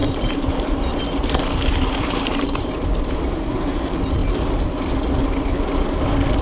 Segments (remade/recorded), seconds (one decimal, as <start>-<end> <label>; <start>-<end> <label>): 0.0-3.8 remade; 3.8-6.4 recorded